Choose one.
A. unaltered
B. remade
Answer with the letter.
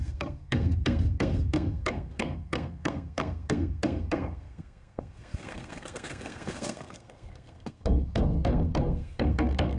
B